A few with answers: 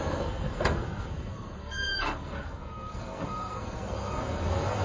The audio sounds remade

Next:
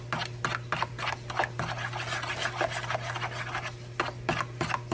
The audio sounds recorded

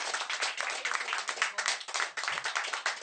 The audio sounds recorded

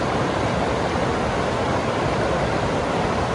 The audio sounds recorded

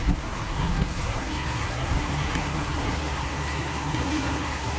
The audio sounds remade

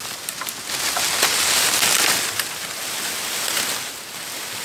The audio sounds recorded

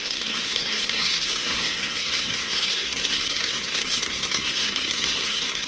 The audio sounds remade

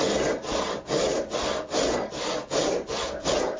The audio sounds recorded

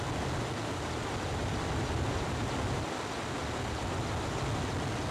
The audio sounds recorded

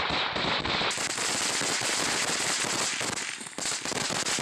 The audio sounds recorded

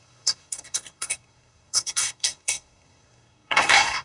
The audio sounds remade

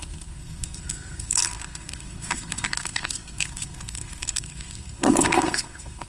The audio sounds remade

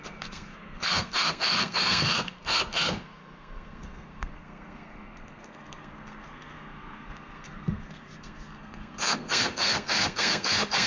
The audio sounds remade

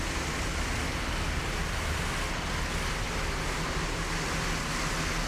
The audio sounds recorded